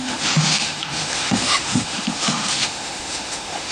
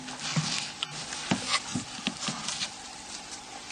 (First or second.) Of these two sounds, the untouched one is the second